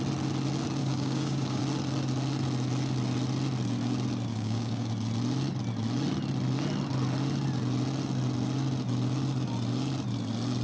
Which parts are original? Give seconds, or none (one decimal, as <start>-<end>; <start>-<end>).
0.0-0.8; 1.6-4.3; 4.9-10.6

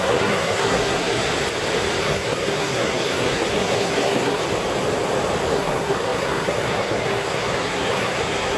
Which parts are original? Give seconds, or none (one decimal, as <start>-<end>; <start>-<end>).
1.3-2.0; 4.4-5.5

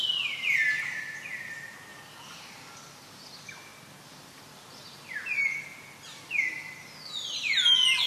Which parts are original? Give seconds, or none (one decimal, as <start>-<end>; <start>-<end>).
0.0-8.1

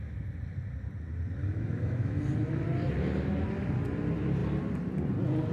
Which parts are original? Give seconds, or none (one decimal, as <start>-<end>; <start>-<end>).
0.0-1.4; 2.2-5.5

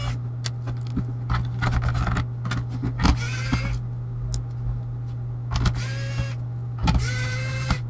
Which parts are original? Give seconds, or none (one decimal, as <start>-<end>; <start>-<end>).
0.0-6.8

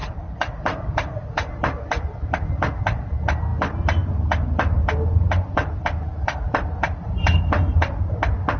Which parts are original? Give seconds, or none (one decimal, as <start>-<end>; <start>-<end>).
2.8-3.5; 8.0-8.6